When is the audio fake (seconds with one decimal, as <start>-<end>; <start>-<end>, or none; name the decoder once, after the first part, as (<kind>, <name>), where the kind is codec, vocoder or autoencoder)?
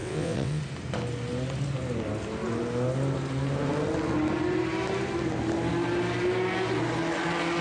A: 0.0-0.6 (vocoder, WaveNeXt)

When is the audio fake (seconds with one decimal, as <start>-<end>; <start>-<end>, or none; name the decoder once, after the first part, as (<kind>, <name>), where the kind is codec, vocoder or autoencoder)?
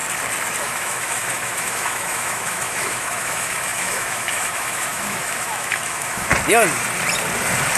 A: 0.6-6.3 (autoencoder, DAC-VAE)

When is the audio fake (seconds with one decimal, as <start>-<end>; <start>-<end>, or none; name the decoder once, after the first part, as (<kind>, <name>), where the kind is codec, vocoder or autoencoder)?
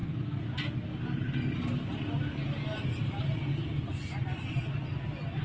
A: none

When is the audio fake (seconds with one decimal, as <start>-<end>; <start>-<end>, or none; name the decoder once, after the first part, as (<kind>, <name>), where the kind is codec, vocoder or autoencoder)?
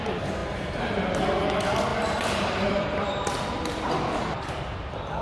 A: 0.4-0.9 (vocoder, BigVGAN v2); 1.9-4.5